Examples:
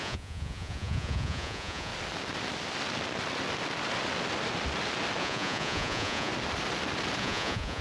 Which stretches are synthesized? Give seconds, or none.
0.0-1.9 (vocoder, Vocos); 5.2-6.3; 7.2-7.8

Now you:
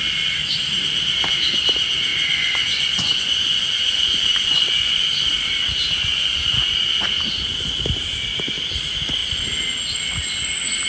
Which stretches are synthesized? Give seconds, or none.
2.1-5.1 (vocoder, Vocos); 6.1-6.7

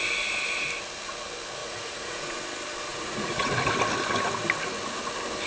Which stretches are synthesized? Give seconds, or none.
1.6-2.4 (vocoder, Vocos); 2.9-3.5

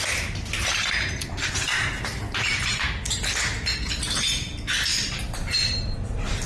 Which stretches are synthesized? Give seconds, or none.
2.5-3.4 (vocoder, BigVGAN v2); 4.9-5.7